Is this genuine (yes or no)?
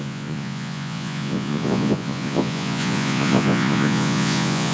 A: no